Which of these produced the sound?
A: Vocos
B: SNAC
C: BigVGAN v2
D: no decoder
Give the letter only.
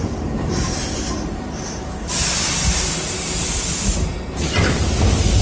D